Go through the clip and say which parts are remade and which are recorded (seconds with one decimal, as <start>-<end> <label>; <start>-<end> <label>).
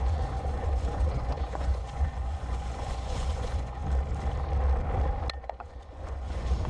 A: 0.0-3.8 remade; 3.8-5.4 recorded; 5.4-6.7 remade